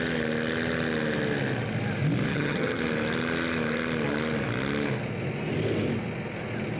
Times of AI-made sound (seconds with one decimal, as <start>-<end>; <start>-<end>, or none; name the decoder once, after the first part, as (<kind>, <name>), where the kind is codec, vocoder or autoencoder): 2.3-2.8 (vocoder, HiFi-GAN)